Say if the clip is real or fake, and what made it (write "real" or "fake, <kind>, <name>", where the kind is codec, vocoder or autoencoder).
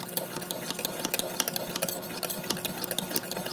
real